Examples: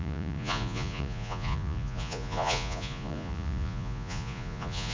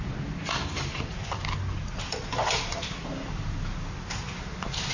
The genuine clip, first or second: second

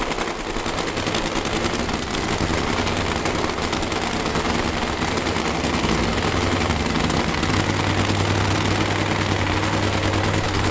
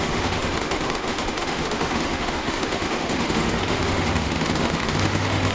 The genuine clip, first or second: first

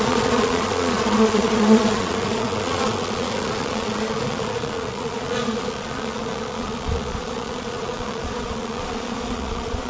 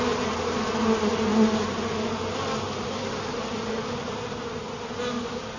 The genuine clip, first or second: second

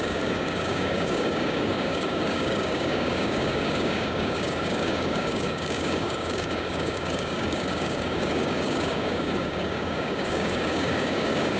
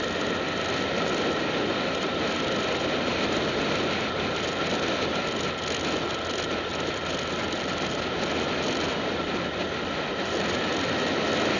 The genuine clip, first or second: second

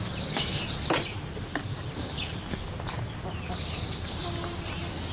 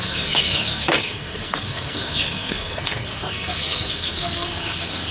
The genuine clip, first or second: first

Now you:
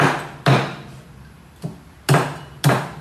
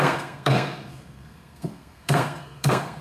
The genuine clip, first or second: first